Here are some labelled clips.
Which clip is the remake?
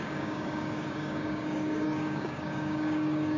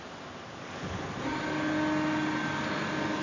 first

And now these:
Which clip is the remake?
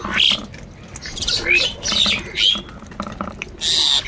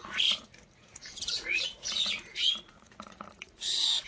second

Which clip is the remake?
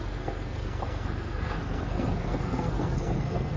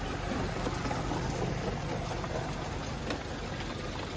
first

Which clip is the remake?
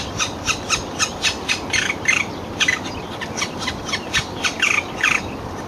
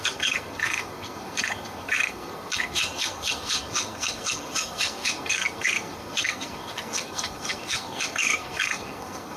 second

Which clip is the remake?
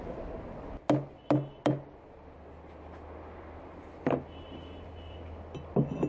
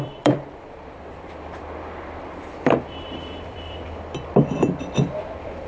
second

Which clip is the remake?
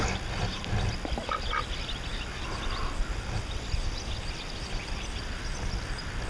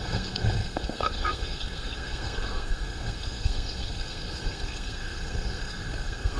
second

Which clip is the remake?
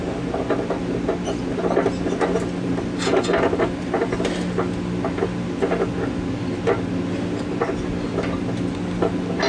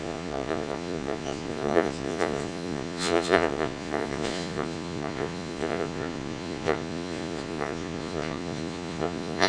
second